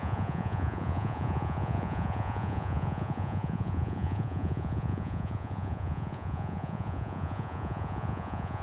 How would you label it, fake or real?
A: fake